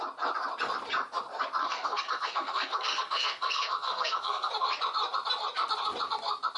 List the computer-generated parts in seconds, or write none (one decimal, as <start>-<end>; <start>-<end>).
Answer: 1.6-4.5